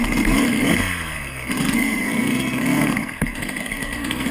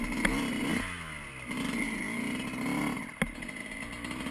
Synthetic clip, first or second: first